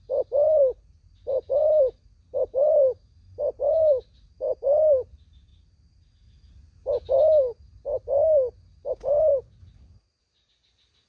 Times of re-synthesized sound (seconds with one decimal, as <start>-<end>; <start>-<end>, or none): 0.0-5.5; 8.9-9.3; 10.2-11.1